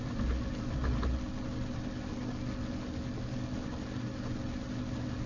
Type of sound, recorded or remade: recorded